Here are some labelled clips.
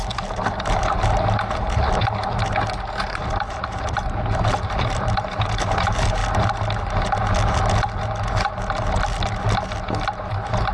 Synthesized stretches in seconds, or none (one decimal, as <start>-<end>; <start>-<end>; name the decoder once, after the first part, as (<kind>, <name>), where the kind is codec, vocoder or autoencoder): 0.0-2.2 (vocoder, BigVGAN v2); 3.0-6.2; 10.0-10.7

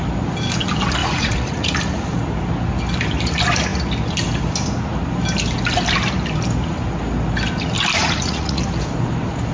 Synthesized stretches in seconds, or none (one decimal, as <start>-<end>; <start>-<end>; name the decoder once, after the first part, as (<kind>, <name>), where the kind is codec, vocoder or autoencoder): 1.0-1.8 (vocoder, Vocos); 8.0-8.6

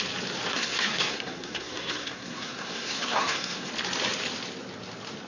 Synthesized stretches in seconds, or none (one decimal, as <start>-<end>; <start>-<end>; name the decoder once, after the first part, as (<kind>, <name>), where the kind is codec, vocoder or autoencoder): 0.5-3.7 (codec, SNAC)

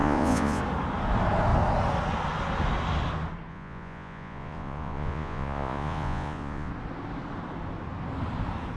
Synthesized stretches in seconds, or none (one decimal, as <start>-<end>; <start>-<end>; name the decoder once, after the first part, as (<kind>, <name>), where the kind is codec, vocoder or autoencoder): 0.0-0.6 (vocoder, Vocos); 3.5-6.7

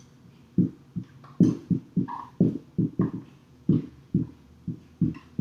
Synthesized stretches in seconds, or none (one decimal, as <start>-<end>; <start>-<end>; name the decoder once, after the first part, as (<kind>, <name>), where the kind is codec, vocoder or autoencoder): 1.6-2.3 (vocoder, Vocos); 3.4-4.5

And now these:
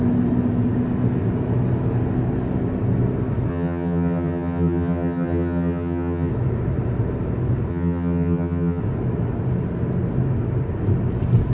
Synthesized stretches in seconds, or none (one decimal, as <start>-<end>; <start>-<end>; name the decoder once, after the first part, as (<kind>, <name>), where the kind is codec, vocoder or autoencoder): 3.5-6.3 (vocoder, HiFi-GAN); 7.7-8.8

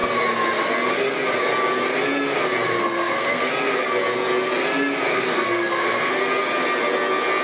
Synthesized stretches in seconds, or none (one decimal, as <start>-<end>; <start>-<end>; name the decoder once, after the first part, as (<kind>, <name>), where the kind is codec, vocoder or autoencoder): 2.8-3.5 (codec, SNAC); 5.1-6.1